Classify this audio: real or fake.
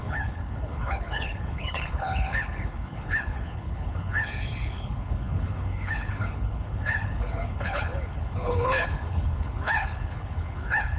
fake